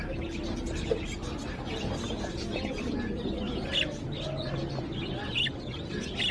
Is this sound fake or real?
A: real